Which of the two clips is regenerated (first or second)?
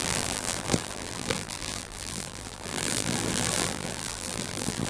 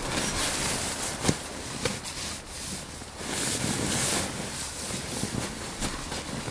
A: first